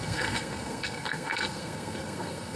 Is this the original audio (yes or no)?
no